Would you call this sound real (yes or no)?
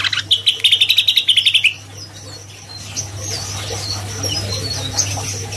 yes